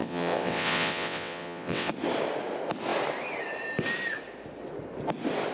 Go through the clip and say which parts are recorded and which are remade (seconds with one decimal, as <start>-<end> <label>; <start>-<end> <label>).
0.0-1.9 remade; 1.9-5.5 recorded